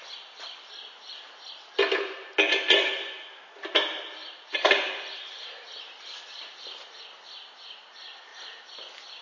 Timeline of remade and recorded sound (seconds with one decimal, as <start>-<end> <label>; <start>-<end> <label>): 0.0-4.2 recorded; 4.2-7.0 remade; 7.0-9.2 recorded